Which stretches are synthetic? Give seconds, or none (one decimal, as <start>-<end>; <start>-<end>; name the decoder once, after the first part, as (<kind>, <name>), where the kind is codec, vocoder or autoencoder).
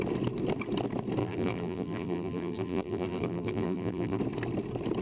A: 1.2-4.2 (vocoder, BigVGAN v2)